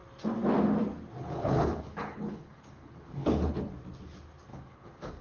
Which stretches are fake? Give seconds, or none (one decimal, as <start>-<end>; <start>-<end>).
1.2-3.7; 4.5-5.2